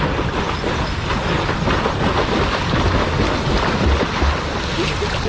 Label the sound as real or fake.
real